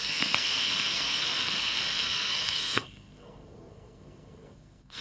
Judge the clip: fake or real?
fake